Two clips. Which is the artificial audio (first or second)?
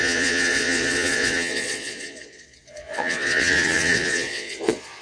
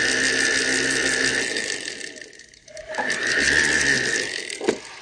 first